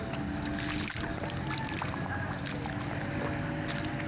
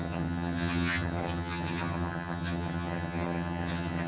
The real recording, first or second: first